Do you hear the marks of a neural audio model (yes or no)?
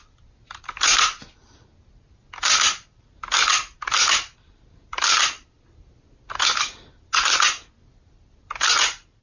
no